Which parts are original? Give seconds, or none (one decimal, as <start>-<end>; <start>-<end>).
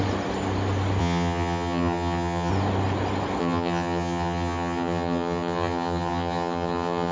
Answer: 0.0-1.0; 2.5-3.4